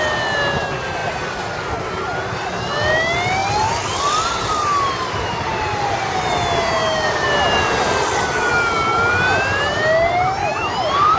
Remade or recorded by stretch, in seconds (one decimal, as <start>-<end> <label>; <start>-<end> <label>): 0.0-11.2 recorded